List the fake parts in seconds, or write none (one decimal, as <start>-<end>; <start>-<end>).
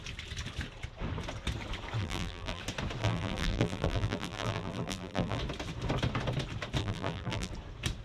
2.0-2.6; 3.0-5.4; 6.8-7.5